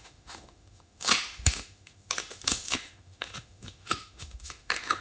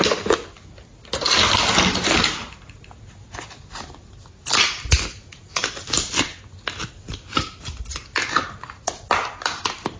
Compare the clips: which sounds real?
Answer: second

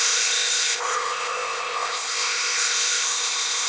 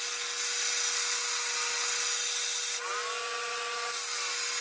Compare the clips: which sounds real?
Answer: second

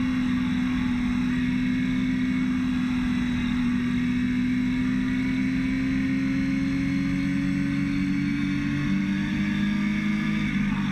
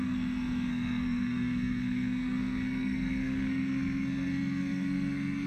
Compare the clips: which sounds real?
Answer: first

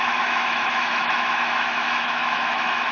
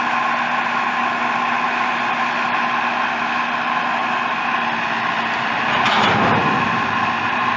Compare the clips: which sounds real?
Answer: second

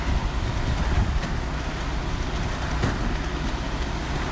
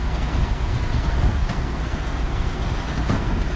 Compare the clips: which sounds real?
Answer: first